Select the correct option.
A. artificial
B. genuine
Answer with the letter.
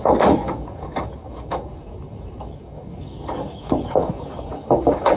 A